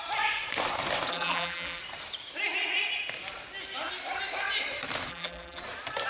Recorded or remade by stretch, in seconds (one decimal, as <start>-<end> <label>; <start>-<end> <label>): 0.0-1.1 recorded; 1.1-1.8 remade; 1.8-5.1 recorded; 5.1-5.6 remade; 5.6-6.1 recorded